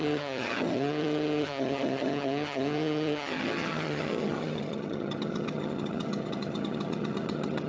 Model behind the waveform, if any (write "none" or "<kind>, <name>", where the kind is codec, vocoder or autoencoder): vocoder, HiFi-GAN